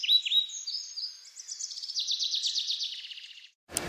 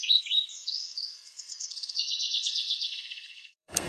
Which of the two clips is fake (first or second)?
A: second